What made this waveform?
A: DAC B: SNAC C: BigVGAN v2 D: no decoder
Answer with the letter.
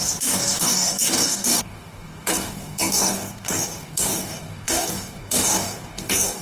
A